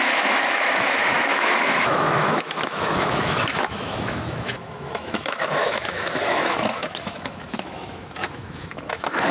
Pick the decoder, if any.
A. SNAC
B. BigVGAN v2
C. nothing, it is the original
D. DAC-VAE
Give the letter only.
D